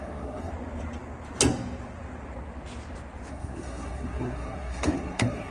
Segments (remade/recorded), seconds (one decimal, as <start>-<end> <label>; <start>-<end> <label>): 0.0-0.5 remade; 0.5-3.3 recorded; 3.3-5.5 remade